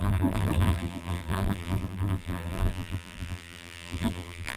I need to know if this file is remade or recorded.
remade